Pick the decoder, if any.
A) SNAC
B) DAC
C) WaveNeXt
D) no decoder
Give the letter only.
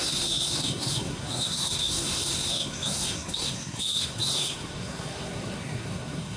A